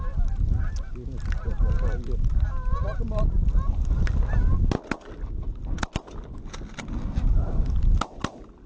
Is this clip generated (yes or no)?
no